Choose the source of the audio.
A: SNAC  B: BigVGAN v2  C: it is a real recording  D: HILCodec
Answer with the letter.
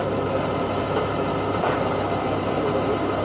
C